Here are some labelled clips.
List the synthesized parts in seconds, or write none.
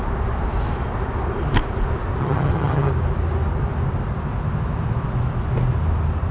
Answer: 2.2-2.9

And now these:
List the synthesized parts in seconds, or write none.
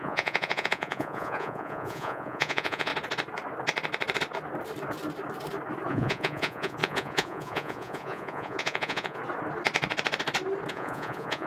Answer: 0.0-2.9; 5.9-9.2; 10.7-11.5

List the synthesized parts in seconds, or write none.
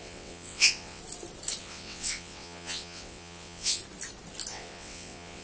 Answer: 0.0-1.0; 1.6-3.8; 4.5-5.4